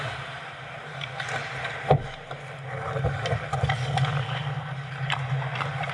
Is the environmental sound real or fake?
real